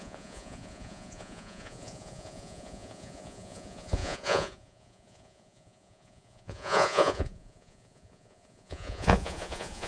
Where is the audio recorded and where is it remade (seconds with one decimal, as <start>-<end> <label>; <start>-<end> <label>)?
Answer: 0.0-9.9 remade